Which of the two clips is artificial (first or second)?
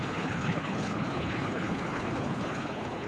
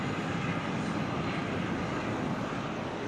first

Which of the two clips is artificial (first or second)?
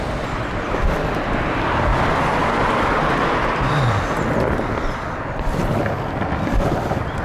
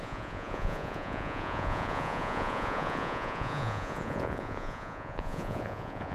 second